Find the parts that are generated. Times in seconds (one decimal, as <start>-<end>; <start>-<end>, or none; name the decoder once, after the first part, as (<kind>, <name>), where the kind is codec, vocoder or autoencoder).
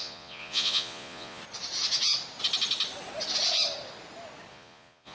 0.0-1.4 (vocoder, Vocos); 4.5-5.1